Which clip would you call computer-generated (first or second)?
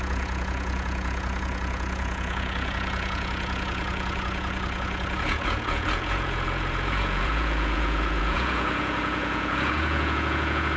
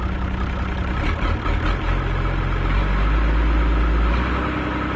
first